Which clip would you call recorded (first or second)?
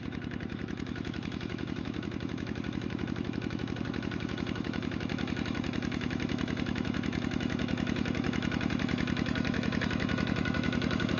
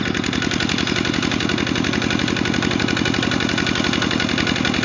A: second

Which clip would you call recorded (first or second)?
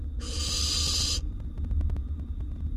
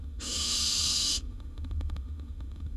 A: first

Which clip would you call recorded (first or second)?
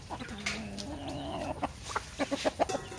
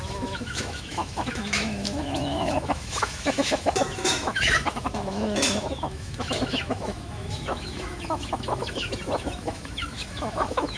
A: first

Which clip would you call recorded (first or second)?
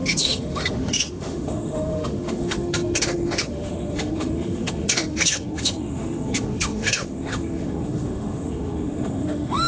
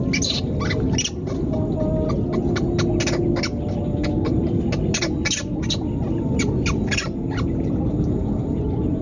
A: second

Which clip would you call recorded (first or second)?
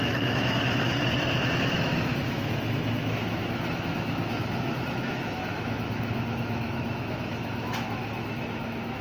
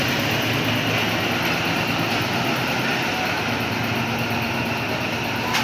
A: second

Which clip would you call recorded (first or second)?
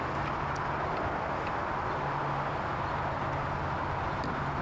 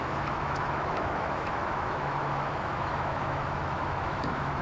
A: first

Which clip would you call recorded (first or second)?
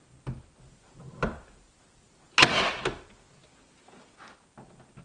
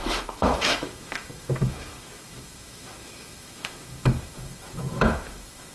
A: first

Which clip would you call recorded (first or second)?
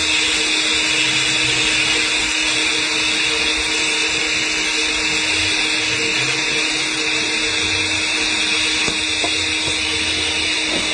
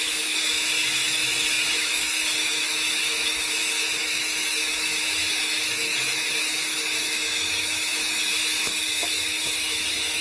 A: first